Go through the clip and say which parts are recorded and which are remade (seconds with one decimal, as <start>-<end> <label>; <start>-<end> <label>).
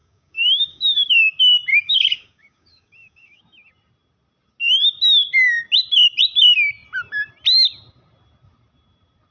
0.0-1.1 remade; 1.1-1.7 recorded; 1.7-3.4 remade; 3.4-9.3 recorded